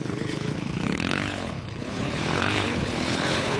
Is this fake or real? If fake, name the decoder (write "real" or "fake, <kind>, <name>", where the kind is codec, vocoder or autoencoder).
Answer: fake, codec, HILCodec